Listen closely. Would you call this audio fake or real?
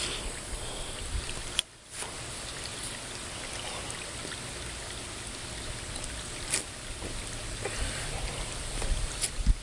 real